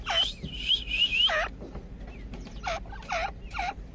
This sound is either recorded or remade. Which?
recorded